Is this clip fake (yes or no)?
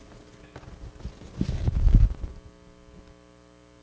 no